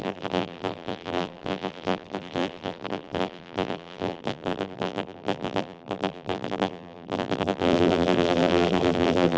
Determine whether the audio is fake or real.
fake